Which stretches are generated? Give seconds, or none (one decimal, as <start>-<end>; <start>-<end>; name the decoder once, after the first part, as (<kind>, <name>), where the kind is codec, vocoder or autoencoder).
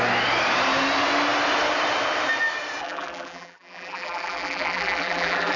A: 2.8-5.6 (vocoder, BigVGAN v2)